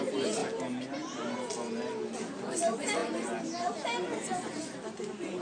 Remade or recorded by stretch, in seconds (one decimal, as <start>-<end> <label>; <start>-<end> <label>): 0.0-5.4 recorded